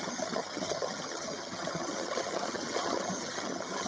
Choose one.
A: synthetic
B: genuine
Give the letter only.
A